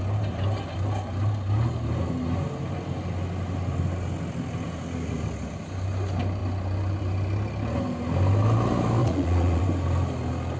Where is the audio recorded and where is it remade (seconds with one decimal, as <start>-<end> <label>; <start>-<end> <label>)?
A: 0.0-9.0 recorded; 9.0-9.6 remade; 9.6-10.6 recorded